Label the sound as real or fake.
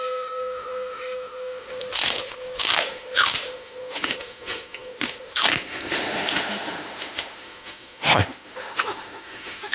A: fake